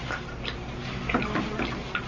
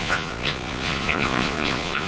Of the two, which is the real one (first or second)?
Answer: first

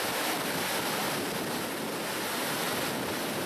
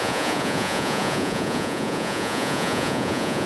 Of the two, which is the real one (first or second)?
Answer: first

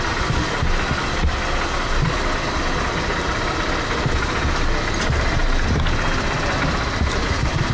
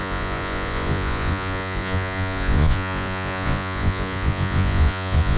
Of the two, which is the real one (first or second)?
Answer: first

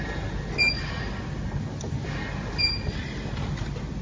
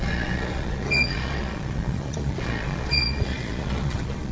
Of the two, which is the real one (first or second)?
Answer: first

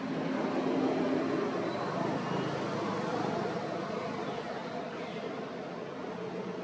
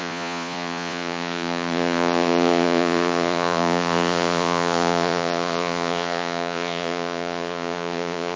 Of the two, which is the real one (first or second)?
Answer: first